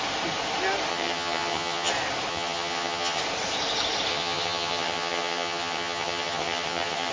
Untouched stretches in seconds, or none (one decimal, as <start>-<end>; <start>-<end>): 0.0-0.9; 1.9-2.3; 3.2-4.1